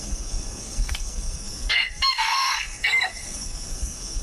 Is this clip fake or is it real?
fake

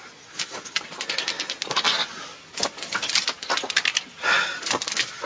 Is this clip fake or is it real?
real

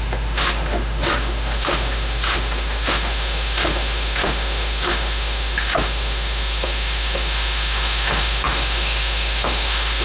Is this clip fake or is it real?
fake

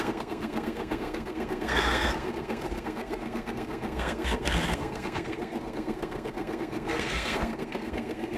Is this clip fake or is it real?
fake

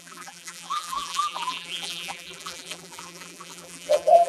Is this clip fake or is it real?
fake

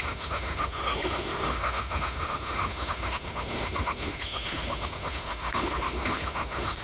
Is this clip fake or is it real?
fake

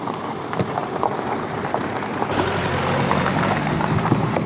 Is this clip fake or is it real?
fake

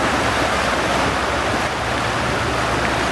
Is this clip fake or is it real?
real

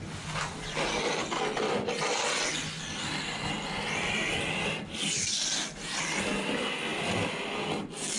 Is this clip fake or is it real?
real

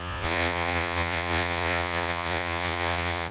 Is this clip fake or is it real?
fake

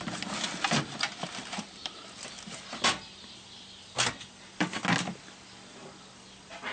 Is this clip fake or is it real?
real